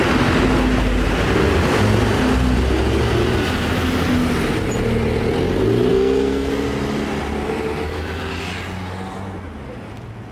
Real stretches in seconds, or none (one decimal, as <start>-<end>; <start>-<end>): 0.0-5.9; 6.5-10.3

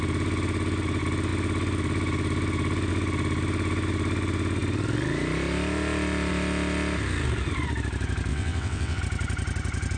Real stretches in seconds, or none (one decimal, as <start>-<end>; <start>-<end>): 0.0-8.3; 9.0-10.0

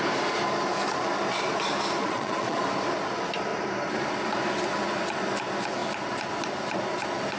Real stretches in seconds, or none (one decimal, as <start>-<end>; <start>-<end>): 0.0-2.0; 2.6-7.4

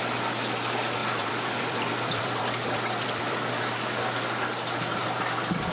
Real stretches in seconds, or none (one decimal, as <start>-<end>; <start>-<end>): 0.0-1.0; 3.6-5.7

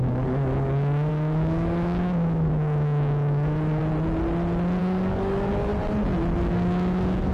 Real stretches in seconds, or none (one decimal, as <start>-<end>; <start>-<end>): 3.8-4.8; 5.7-6.4

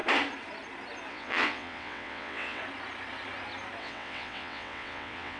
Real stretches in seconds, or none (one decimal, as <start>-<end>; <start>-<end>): 0.0-1.1; 2.6-3.8

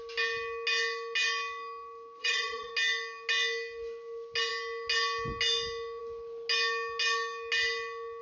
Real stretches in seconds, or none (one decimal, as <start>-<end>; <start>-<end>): 0.0-2.2; 2.7-8.2

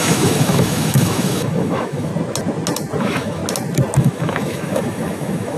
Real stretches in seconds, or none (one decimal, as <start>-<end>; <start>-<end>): 2.1-3.0; 3.4-4.0